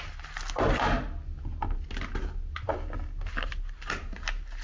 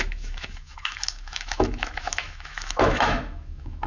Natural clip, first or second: first